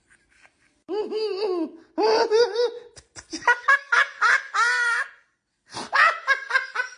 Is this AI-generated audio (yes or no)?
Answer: no